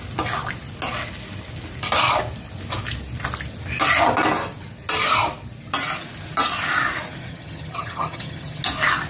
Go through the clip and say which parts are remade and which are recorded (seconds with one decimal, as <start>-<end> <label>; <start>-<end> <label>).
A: 0.0-7.3 recorded; 7.3-8.6 remade; 8.6-9.1 recorded